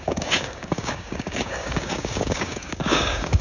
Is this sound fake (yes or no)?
yes